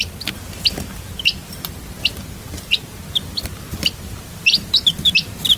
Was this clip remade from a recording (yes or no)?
no